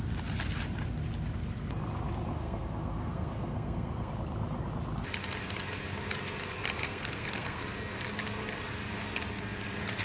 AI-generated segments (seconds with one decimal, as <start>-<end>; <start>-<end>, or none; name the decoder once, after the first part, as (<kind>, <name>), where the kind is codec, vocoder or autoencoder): 2.3-4.1 (codec, SNAC); 6.8-7.6